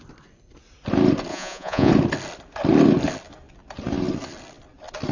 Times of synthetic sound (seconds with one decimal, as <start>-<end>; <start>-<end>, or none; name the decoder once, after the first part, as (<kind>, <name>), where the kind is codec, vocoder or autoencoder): 1.3-1.9 (vocoder, Vocos)